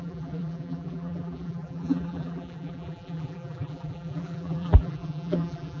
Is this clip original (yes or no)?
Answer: no